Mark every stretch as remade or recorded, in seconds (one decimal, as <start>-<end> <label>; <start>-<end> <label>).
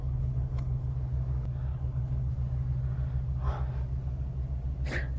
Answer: 0.0-0.9 remade; 0.9-1.7 recorded; 1.7-2.3 remade; 2.3-5.2 recorded